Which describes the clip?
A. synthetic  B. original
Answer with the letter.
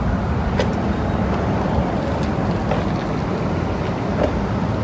B